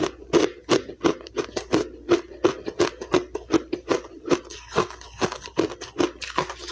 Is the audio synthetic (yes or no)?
no